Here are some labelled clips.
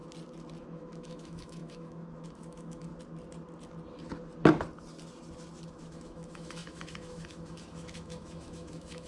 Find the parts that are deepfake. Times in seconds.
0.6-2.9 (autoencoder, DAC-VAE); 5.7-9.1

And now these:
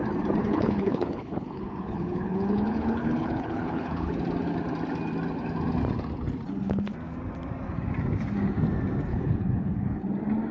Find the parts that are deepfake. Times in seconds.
0.4-4.1 (codec, HILCodec); 9.1-10.0

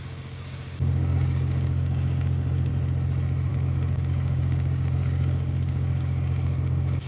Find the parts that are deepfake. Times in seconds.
0.0-2.7 (codec, DAC); 3.5-7.1

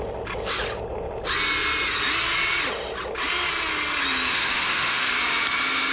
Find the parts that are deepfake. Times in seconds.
4.3-5.1 (autoencoder, DAC-VAE)

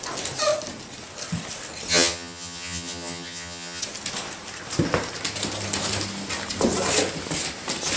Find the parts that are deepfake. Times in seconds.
1.9-3.8 (vocoder, HiFi-GAN)

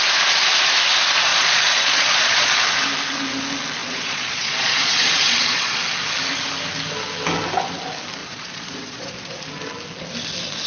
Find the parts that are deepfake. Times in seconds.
1.3-2.6 (vocoder, Vocos); 3.8-5.8; 8.2-9.4

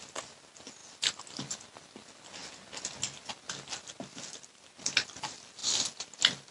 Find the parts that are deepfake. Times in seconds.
none

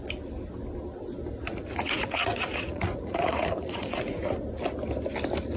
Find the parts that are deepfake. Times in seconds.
1.5-4.3 (vocoder, Vocos)